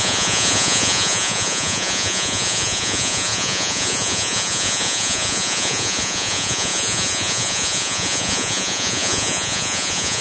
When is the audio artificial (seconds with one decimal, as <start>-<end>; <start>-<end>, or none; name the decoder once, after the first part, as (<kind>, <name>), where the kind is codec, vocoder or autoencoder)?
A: 0.0-10.2 (vocoder, Vocos)